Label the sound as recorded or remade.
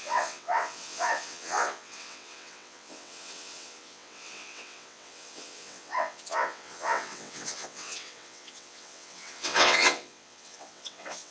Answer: remade